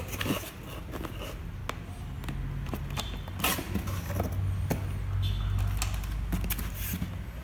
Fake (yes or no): no